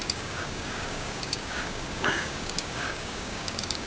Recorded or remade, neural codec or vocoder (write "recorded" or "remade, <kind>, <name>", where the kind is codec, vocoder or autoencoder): remade, codec, DAC